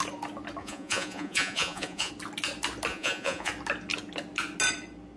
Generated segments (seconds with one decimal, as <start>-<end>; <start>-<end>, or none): 0.6-2.1; 2.9-3.5